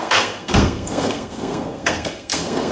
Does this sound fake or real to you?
fake